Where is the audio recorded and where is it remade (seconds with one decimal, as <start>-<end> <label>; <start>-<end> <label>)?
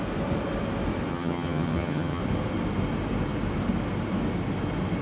0.0-1.1 recorded; 1.1-2.2 remade; 2.2-5.0 recorded